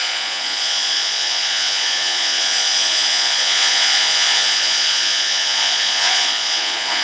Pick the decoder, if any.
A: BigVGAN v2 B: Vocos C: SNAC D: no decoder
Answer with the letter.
B